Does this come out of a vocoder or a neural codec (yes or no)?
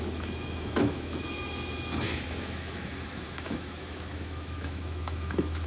yes